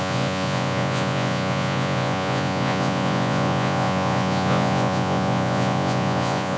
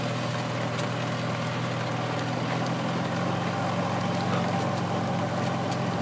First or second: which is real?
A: second